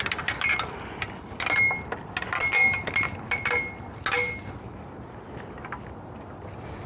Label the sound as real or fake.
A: real